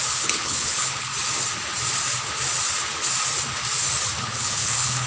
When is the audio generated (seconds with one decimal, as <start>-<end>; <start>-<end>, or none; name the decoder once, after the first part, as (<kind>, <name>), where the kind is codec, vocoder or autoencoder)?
0.0-1.1 (codec, HILCodec); 4.2-5.1